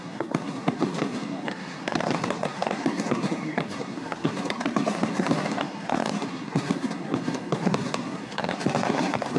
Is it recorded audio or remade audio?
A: remade